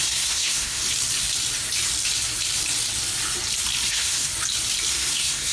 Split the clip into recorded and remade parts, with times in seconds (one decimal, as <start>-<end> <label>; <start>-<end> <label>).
0.0-0.8 remade; 0.8-3.9 recorded; 3.9-4.3 remade; 4.3-4.9 recorded; 4.9-5.5 remade